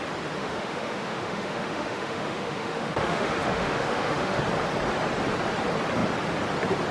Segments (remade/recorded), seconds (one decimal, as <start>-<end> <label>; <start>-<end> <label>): 0.0-0.4 recorded; 0.4-4.4 remade; 4.4-6.9 recorded